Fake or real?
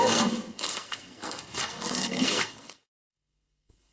fake